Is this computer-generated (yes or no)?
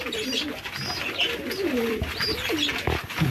no